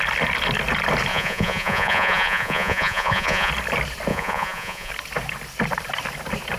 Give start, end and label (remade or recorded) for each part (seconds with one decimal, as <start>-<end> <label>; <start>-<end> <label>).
0.0-1.1 recorded; 1.1-3.5 remade; 3.5-4.1 recorded; 4.1-4.9 remade; 4.9-6.6 recorded